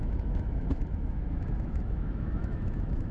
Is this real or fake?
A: fake